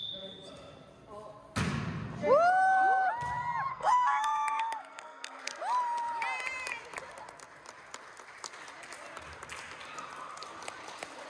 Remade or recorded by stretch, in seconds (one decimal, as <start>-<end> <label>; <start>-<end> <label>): 0.0-3.7 recorded; 3.7-5.4 remade; 5.4-11.3 recorded